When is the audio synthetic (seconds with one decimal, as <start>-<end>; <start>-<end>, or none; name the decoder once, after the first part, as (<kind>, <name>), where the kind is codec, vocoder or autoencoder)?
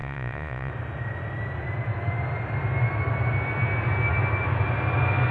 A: 0.0-0.7 (vocoder, Vocos)